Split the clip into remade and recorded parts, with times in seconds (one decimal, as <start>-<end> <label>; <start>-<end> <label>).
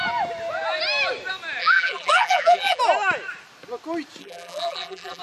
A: 0.0-1.6 recorded; 1.6-2.8 remade; 2.8-4.2 recorded; 4.2-5.2 remade